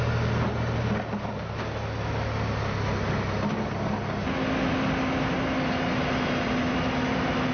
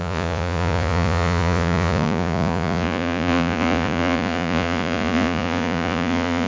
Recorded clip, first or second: first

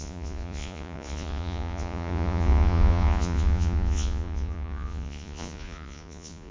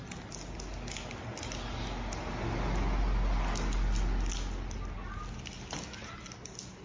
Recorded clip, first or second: second